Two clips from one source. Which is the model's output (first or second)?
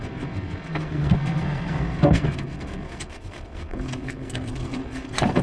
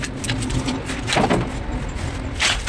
first